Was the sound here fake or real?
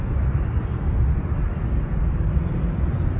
real